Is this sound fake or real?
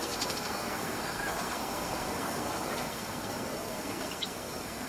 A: fake